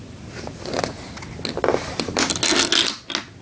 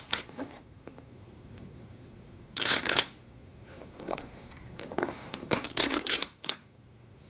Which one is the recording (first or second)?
first